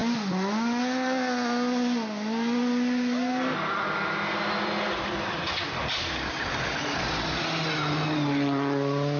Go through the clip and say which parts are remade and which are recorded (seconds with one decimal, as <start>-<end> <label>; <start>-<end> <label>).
0.0-9.2 recorded